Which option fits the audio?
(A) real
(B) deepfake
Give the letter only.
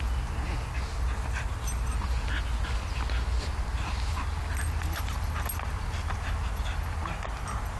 A